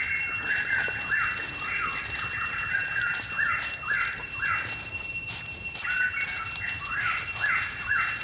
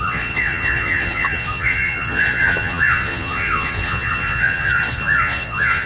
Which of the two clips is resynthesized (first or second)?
second